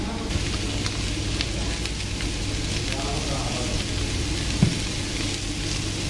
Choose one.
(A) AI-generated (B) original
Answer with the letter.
B